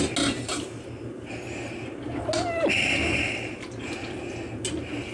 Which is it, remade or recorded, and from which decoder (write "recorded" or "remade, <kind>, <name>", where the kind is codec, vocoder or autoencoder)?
recorded